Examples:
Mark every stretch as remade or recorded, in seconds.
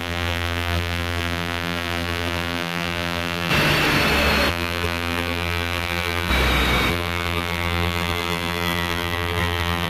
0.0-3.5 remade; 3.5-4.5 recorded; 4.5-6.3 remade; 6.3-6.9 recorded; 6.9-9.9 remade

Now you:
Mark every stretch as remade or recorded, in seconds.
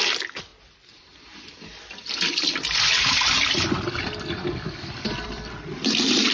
0.0-6.3 remade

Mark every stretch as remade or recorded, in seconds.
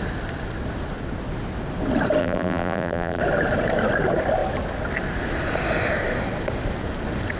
0.0-2.2 recorded; 2.2-3.2 remade; 3.2-7.4 recorded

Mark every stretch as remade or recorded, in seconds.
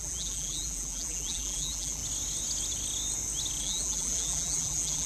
0.0-2.0 remade; 2.0-3.6 recorded; 3.6-5.1 remade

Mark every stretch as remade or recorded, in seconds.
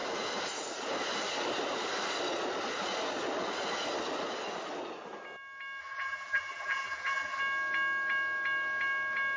0.0-5.8 recorded; 5.8-7.4 remade; 7.4-9.4 recorded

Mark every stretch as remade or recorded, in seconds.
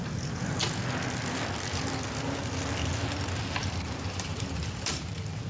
0.0-3.6 recorded; 3.6-5.0 remade; 5.0-5.5 recorded